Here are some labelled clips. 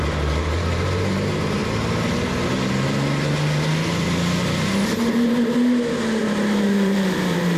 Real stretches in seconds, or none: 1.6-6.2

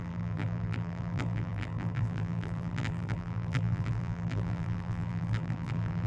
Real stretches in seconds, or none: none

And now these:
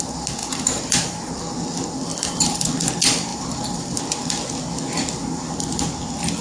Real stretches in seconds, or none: 0.0-0.4; 1.3-2.1; 2.7-3.3; 4.0-6.4

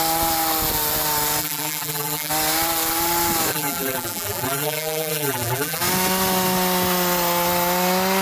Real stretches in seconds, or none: 0.0-1.4; 2.3-3.5; 5.8-8.2

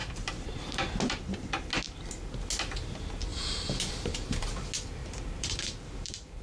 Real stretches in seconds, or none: 1.5-3.3; 4.5-5.0

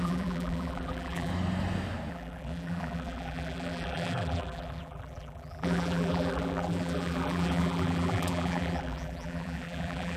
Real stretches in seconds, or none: 1.3-2.1

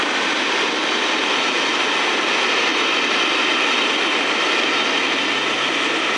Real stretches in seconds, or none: 0.0-6.2

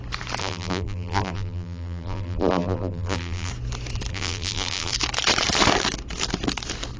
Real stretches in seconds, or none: 0.0-0.4; 3.5-4.1; 4.9-7.0